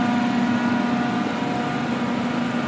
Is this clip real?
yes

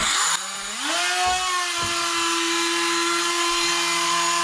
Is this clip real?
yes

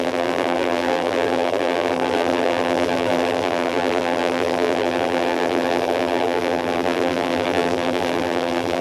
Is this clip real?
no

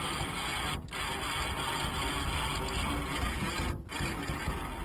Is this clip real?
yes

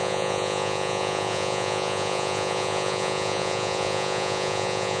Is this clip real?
no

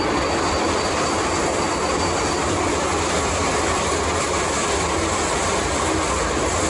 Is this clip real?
yes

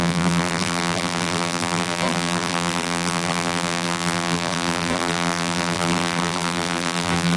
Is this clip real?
no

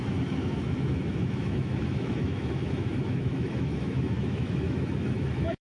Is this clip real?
no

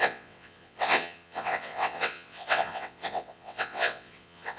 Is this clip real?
no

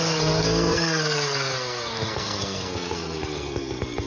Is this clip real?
no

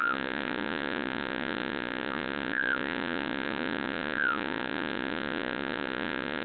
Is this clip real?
no